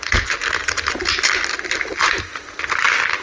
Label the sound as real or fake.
real